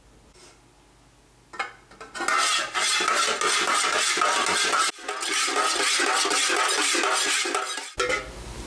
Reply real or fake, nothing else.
real